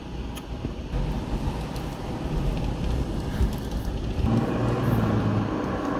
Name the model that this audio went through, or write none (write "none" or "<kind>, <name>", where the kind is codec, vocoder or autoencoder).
none